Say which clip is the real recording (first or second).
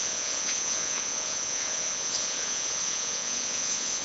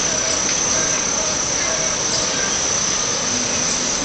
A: second